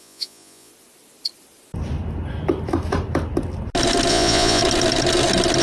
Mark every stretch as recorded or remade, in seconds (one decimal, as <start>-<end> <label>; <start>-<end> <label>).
0.0-0.7 remade; 0.7-4.1 recorded; 4.1-4.6 remade; 4.6-5.6 recorded